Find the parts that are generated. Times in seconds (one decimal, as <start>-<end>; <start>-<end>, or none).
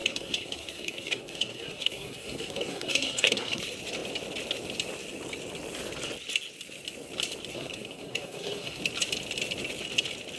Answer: 0.0-3.6; 7.5-8.8